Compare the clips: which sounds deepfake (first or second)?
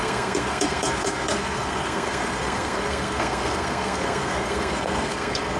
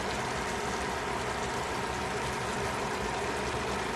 first